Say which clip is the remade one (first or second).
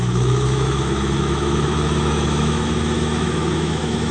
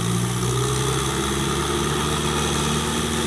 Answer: first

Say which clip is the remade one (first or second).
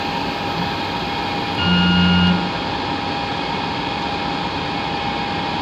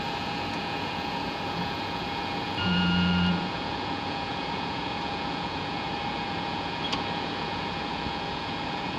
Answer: second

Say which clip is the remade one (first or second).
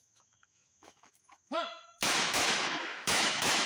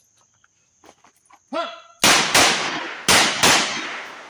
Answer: first